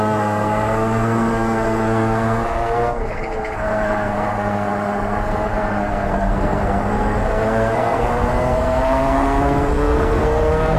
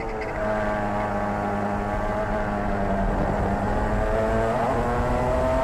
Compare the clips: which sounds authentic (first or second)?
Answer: second